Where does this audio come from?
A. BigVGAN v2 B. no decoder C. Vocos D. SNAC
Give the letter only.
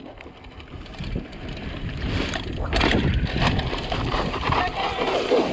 B